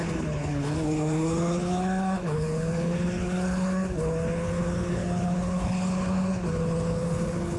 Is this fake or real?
fake